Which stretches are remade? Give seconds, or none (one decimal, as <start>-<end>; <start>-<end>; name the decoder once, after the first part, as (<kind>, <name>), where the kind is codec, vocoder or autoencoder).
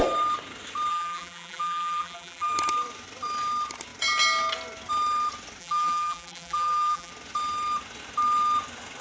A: 0.9-2.5 (vocoder, BigVGAN v2); 5.6-7.1